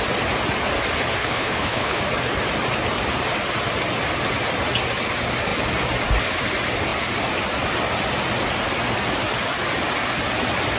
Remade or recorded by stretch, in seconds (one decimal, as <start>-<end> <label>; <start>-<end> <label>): 0.0-1.2 recorded; 1.2-2.0 remade; 2.0-10.8 recorded